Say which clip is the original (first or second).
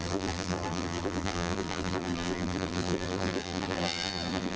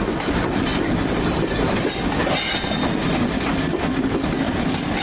second